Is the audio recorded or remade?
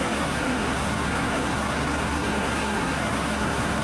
remade